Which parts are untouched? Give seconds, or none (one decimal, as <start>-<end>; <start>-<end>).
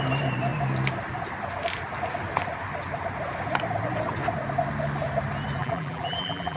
0.0-5.6